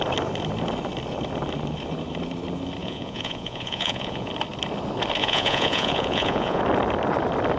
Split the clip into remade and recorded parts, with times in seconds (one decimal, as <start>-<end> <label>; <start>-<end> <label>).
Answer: 0.0-2.8 recorded; 2.8-4.3 remade; 4.3-5.2 recorded; 5.2-6.6 remade; 6.6-7.6 recorded